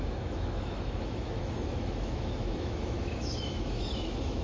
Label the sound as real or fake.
fake